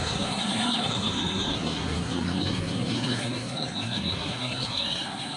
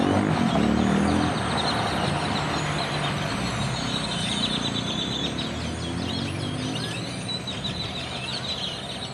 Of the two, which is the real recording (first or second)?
second